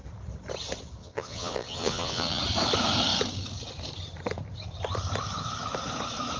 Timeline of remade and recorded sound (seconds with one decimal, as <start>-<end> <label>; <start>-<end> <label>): 0.0-1.0 recorded; 1.0-2.4 remade; 2.4-6.4 recorded

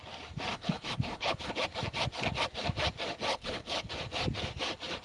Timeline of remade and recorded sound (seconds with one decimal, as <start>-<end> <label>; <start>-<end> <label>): 0.0-0.5 recorded; 0.5-1.5 remade; 1.5-3.3 recorded; 3.3-3.9 remade; 3.9-5.0 recorded

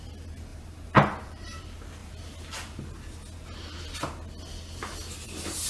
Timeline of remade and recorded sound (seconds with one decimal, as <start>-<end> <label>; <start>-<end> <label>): 0.0-0.5 recorded; 0.5-1.6 remade; 1.6-5.7 recorded

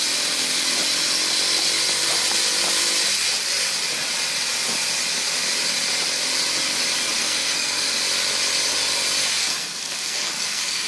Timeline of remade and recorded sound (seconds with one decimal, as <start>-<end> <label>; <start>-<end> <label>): 0.0-7.2 recorded; 7.2-7.9 remade; 7.9-9.4 recorded; 9.4-10.9 remade

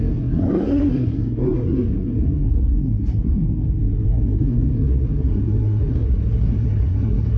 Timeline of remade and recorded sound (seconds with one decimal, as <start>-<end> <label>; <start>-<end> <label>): 0.0-7.4 remade

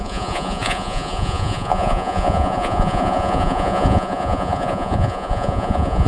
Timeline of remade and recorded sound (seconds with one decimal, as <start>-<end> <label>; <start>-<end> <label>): 0.0-6.1 remade

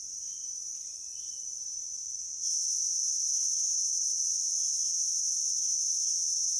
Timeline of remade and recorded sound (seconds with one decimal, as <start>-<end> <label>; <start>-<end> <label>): 0.0-2.2 recorded; 2.2-6.6 remade